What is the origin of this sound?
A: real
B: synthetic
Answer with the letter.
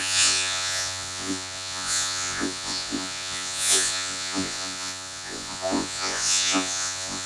B